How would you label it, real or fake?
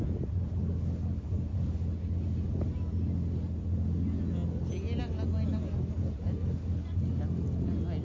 real